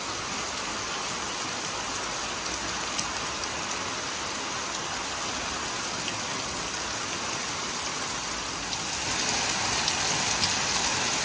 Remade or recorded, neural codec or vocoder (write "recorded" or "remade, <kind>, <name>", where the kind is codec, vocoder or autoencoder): recorded